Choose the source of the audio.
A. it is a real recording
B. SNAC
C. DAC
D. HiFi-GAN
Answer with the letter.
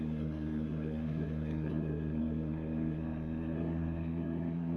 B